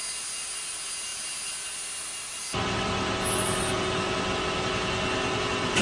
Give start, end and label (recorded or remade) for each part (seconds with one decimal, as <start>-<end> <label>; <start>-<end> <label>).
0.0-5.8 recorded